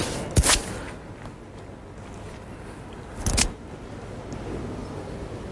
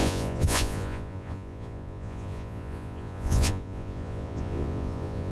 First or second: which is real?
first